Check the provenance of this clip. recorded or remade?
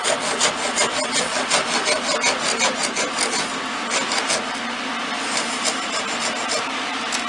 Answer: recorded